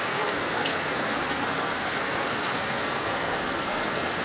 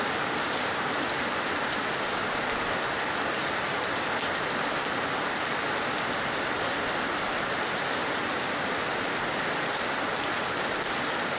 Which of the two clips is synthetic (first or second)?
first